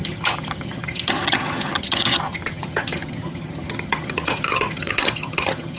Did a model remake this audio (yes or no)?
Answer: yes